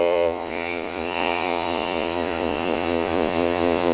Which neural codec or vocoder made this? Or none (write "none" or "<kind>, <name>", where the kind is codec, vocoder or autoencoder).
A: vocoder, Vocos